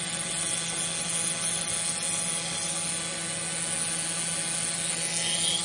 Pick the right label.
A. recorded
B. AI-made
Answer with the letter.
A